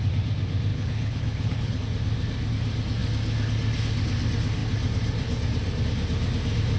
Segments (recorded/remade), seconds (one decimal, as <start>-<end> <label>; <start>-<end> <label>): 0.0-0.7 recorded; 0.7-1.8 remade; 1.8-6.8 recorded